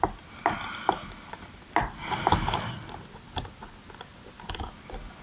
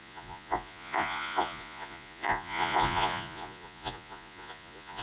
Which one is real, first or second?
first